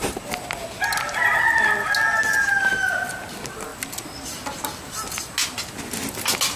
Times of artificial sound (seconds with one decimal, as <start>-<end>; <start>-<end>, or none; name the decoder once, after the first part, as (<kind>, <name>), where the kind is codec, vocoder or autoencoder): none